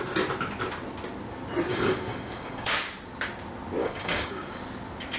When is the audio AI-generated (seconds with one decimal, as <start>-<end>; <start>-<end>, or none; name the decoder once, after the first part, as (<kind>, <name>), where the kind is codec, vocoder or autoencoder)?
1.7-2.7 (codec, DAC); 3.8-4.6

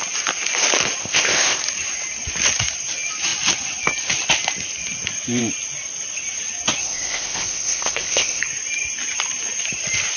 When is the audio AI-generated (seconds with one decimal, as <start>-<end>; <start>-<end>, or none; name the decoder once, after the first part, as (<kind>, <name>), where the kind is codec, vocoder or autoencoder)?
1.0-1.6 (codec, ZipCodec); 6.8-8.4

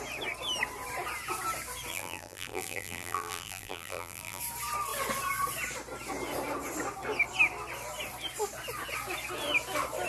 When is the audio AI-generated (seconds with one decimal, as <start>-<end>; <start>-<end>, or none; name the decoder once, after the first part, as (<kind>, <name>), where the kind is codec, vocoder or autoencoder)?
1.9-4.4 (vocoder, BigVGAN v2)

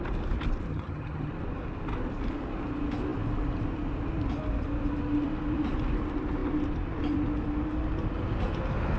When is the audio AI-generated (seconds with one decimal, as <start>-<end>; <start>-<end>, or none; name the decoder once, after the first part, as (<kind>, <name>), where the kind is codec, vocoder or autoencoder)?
0.7-1.3 (vocoder, HiFi-GAN)

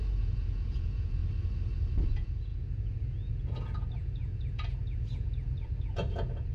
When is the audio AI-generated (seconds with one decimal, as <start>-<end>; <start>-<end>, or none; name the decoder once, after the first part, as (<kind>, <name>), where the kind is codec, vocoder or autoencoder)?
0.0-1.2 (vocoder, Vocos); 1.9-6.5

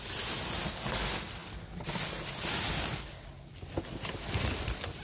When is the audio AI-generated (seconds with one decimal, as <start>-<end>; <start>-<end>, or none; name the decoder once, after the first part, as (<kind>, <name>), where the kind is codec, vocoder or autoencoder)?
none